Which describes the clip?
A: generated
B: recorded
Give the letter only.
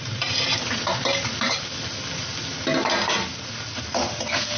B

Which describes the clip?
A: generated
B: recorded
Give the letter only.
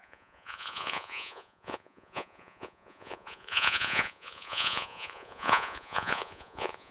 A